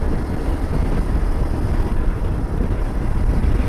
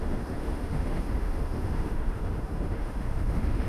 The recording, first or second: first